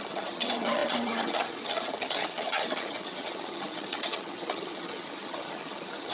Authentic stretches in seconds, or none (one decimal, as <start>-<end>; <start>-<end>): none